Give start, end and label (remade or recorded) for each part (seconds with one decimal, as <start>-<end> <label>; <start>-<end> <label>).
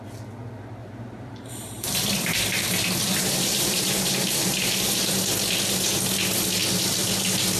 0.0-0.8 recorded; 0.8-5.2 remade; 5.2-7.6 recorded